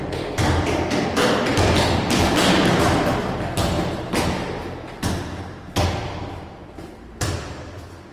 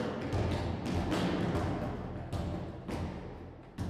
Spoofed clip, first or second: first